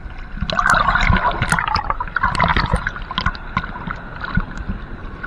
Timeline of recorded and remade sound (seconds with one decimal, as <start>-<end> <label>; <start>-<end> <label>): 0.0-5.3 recorded